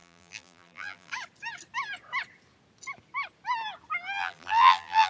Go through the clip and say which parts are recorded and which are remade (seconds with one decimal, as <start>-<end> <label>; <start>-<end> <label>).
0.0-1.1 remade; 1.1-4.2 recorded; 4.2-5.1 remade